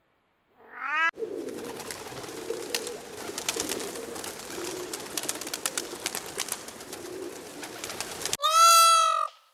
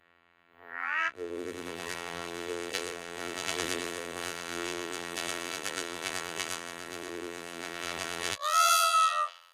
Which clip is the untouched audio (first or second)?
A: first